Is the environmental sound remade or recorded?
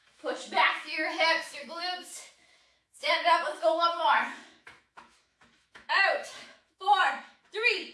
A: remade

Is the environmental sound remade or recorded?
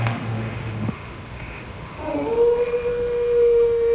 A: remade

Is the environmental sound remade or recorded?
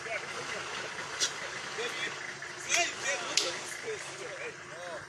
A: recorded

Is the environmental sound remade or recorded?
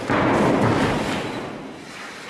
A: recorded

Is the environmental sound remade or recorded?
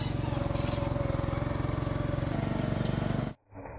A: recorded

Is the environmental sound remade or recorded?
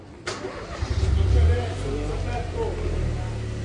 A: recorded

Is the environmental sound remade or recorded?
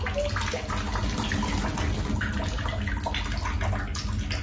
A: recorded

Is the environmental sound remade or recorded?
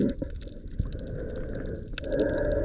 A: recorded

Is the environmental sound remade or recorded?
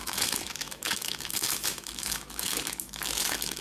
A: remade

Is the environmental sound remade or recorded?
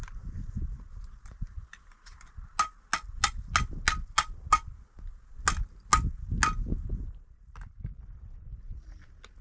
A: recorded